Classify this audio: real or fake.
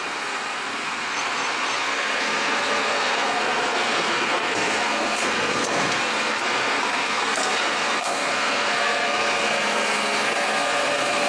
fake